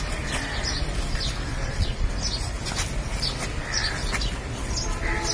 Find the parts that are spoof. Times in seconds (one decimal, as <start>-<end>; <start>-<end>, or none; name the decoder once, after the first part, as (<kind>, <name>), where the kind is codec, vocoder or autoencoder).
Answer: 1.5-2.1 (vocoder, Vocos)